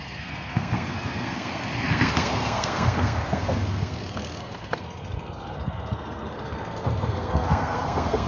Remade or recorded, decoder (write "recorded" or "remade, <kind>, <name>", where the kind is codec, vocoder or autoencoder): remade, codec, SNAC